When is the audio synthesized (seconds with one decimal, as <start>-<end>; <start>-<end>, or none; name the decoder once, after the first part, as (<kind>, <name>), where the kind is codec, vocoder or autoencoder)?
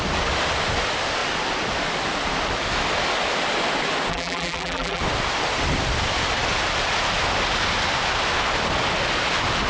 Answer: 4.1-5.0 (vocoder, BigVGAN v2)